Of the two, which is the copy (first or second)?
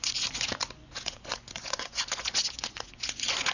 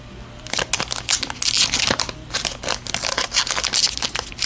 first